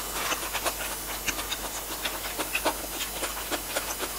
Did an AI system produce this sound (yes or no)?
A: no